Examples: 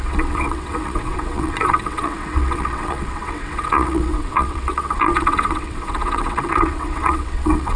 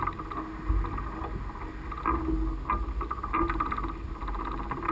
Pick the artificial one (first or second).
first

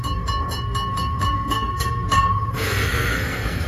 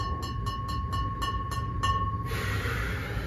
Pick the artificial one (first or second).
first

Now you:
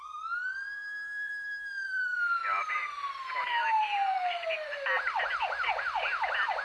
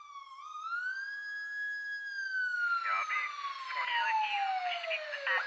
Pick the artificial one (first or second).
first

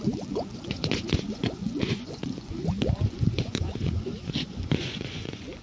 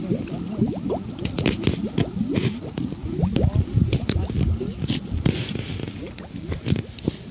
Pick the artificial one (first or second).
first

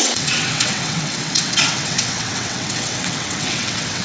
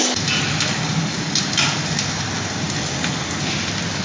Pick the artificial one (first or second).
first